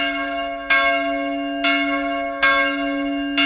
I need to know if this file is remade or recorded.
recorded